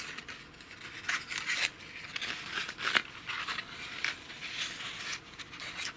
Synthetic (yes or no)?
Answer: no